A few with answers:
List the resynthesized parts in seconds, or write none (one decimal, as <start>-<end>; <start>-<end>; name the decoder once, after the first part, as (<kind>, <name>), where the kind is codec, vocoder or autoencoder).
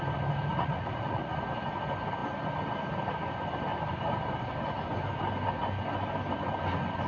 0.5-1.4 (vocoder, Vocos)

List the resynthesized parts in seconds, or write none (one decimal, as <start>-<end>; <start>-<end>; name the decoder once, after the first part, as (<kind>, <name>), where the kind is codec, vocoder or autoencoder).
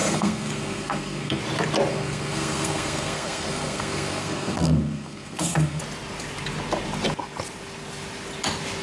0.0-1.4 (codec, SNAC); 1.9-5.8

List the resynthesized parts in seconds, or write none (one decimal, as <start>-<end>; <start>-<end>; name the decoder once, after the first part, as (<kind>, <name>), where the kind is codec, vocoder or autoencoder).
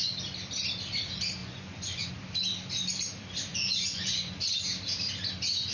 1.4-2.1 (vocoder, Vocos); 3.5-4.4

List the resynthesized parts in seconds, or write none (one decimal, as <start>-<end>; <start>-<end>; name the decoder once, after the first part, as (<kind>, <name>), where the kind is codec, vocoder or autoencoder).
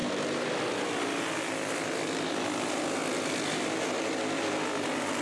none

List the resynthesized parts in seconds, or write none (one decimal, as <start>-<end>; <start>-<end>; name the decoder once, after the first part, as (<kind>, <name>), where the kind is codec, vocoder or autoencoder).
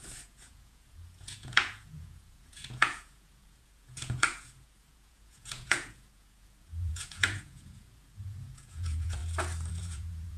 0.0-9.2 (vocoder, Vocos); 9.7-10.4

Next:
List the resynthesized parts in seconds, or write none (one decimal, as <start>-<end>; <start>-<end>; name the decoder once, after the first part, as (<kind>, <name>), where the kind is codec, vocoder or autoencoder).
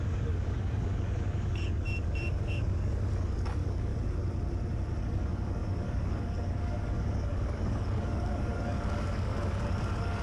0.0-3.9 (codec, DAC); 5.0-10.2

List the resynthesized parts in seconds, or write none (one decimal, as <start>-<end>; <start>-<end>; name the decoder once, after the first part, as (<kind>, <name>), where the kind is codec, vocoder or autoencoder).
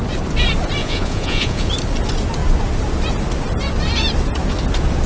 0.8-1.7 (vocoder, Vocos)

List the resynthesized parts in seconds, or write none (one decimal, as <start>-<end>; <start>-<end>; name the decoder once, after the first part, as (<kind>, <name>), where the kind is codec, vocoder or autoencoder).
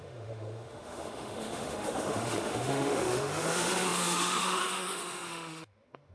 0.0-6.1 (autoencoder, DAC-VAE)